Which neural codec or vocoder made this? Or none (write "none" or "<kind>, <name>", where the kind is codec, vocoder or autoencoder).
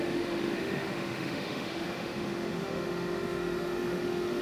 autoencoder, DAC-VAE